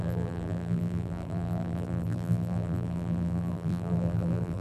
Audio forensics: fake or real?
fake